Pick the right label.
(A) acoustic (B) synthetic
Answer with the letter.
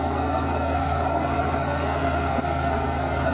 B